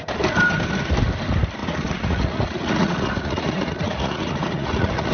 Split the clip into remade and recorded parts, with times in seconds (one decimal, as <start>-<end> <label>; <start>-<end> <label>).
0.0-1.6 recorded; 1.6-5.1 remade